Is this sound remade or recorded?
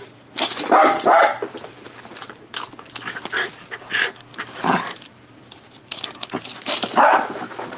recorded